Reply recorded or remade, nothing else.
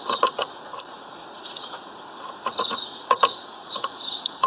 remade